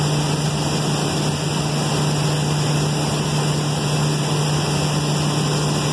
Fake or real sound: real